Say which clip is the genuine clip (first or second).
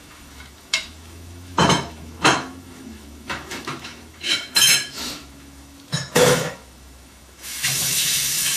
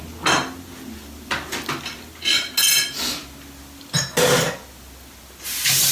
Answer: second